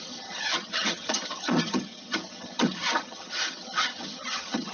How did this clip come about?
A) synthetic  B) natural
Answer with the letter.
A